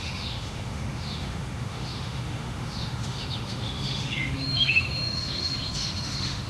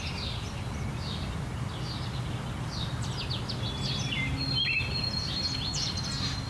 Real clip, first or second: second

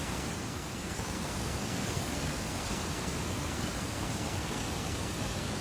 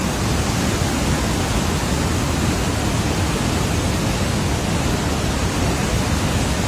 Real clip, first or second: second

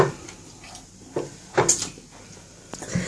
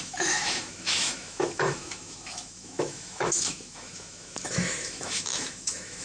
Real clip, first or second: first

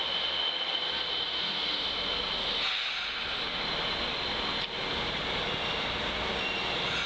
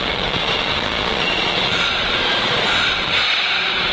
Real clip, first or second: first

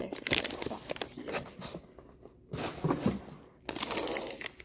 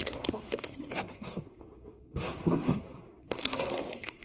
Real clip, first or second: first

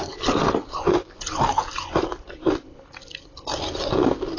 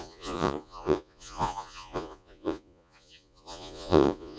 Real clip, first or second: first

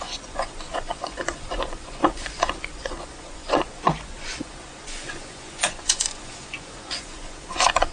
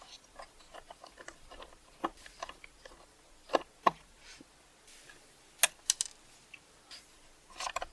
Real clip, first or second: second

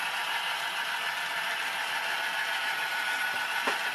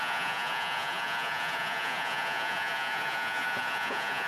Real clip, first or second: first